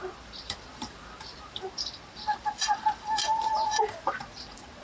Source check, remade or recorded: remade